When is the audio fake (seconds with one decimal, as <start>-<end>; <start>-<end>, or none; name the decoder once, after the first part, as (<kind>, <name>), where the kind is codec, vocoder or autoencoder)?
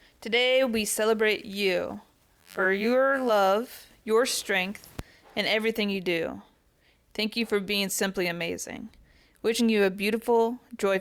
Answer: 2.4-3.3 (vocoder, BigVGAN v2)